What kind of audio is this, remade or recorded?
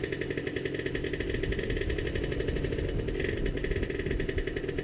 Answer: recorded